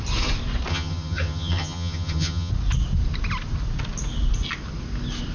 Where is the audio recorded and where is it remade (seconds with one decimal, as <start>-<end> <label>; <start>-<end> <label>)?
0.0-0.7 recorded; 0.7-2.5 remade; 2.5-5.3 recorded

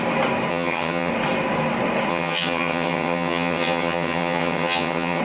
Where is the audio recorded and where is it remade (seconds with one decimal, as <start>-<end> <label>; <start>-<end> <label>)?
0.0-0.5 recorded; 0.5-1.1 remade; 1.1-2.1 recorded; 2.1-5.2 remade

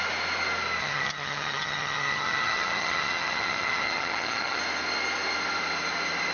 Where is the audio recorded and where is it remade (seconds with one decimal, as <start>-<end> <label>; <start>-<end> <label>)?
0.0-0.8 recorded; 0.8-4.6 remade; 4.6-6.3 recorded

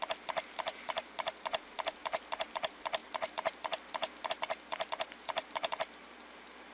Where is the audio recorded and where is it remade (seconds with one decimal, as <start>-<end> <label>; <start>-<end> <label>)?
0.0-6.7 recorded

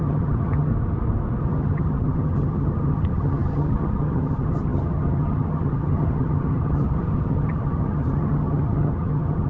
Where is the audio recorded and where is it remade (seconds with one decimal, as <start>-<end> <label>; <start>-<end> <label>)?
0.0-0.7 remade; 0.7-1.4 recorded; 1.4-9.5 remade

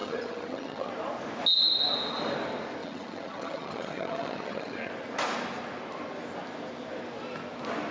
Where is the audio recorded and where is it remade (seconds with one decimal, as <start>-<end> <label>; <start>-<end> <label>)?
0.0-0.9 remade; 0.9-2.8 recorded; 2.8-4.9 remade; 4.9-7.9 recorded

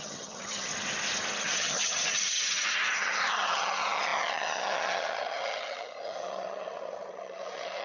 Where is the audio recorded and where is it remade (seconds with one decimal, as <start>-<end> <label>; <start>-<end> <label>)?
0.0-0.7 remade; 0.7-1.4 recorded; 1.4-7.8 remade